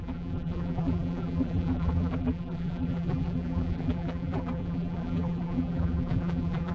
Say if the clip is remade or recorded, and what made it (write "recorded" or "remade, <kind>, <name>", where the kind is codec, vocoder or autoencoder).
remade, vocoder, BigVGAN v2